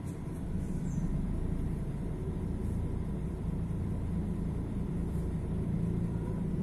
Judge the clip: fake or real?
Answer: fake